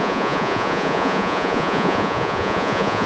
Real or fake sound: fake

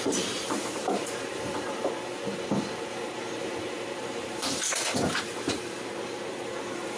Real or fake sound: fake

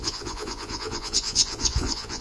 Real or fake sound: fake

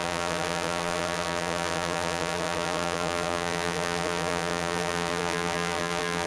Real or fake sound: fake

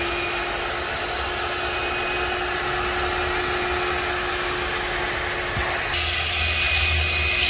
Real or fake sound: real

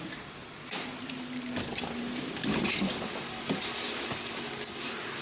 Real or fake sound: real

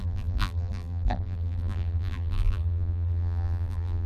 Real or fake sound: fake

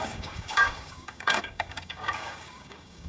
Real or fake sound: fake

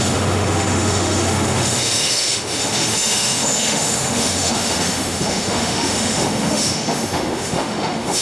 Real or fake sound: fake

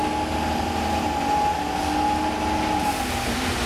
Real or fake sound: real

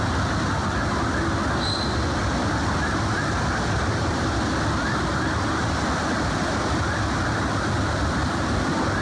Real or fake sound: real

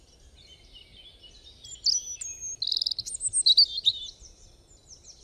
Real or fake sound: real